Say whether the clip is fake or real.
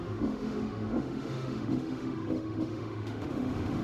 fake